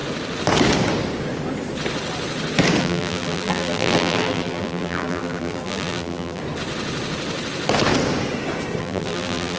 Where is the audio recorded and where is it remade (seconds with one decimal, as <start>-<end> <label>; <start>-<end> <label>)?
0.0-2.8 recorded; 2.8-6.4 remade; 6.4-8.8 recorded; 8.8-9.6 remade